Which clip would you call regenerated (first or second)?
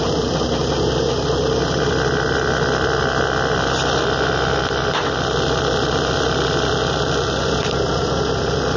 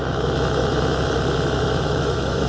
second